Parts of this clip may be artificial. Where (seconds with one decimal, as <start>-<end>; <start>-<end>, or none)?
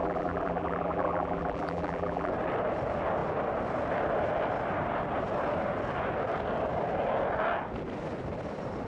0.0-2.3